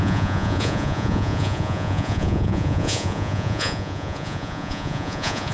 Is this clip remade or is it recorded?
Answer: remade